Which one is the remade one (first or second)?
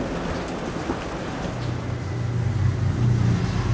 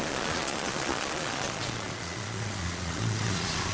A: second